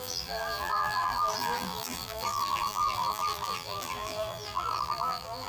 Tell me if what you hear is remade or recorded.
remade